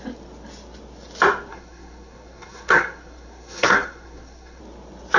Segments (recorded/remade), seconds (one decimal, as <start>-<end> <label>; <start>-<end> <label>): 0.0-1.5 recorded; 1.5-4.6 remade; 4.6-5.2 recorded